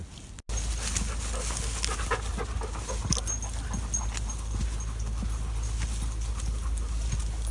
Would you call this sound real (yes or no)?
yes